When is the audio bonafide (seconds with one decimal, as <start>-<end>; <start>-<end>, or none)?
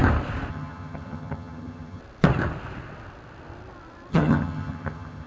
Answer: 0.0-0.5; 2.0-4.1